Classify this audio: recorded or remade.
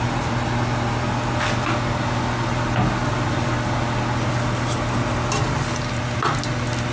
recorded